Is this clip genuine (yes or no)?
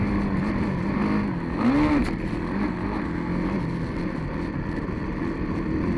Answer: yes